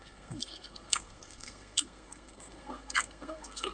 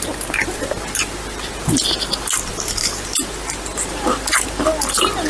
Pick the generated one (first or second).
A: first